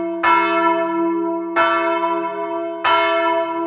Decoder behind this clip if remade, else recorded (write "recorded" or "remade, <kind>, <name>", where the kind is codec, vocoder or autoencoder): recorded